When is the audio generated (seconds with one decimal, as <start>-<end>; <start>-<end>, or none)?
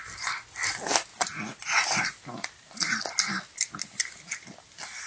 none